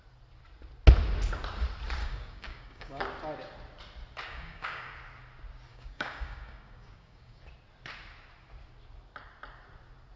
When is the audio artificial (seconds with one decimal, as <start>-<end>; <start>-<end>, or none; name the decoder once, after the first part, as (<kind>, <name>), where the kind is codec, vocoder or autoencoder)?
2.0-3.0 (codec, DAC); 4.3-4.9; 5.7-7.4